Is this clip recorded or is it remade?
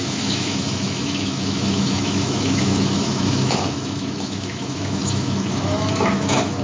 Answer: remade